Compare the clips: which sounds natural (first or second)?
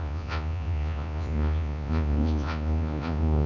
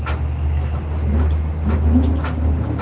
second